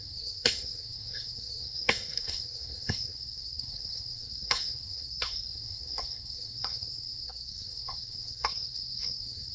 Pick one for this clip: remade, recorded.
remade